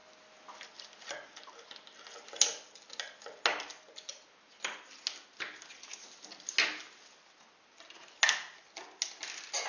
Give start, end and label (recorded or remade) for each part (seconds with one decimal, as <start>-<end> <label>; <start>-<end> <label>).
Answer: 0.0-9.7 recorded